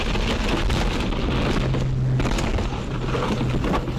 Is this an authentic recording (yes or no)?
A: yes